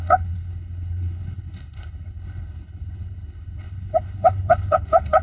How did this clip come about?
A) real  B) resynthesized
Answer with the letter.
B